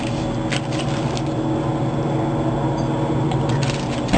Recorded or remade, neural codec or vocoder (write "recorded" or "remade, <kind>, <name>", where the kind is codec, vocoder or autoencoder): recorded